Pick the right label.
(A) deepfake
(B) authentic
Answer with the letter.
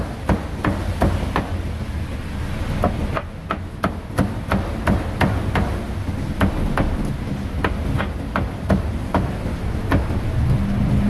B